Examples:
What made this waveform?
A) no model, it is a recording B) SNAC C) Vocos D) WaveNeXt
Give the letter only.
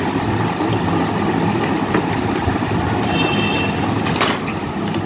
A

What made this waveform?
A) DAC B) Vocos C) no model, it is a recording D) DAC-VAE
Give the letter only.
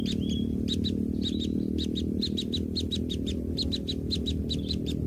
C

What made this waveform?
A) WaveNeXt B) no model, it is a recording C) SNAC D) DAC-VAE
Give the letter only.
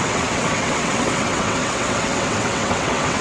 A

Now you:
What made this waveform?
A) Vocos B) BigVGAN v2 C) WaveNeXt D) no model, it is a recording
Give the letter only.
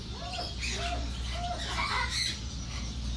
D